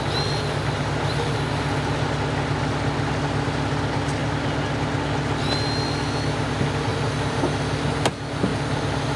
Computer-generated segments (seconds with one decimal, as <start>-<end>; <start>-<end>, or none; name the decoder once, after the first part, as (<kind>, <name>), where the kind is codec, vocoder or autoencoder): 6.9-7.4 (vocoder, BigVGAN v2); 8.5-9.2